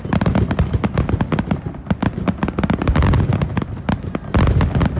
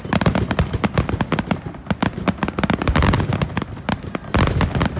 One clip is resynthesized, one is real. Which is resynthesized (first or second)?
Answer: second